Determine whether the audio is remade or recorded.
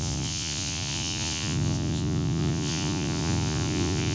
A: remade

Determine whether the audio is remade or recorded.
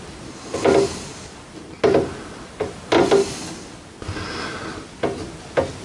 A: recorded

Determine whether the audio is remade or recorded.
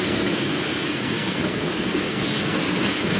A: remade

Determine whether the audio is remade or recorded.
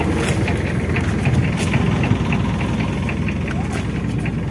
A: recorded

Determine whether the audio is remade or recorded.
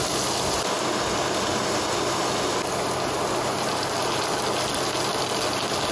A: recorded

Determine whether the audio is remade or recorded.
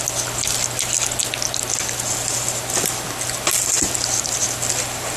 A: recorded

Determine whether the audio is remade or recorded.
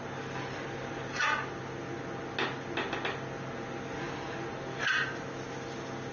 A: recorded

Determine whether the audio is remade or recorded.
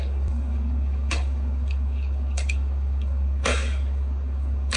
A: remade